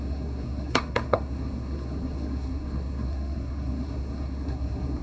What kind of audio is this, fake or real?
fake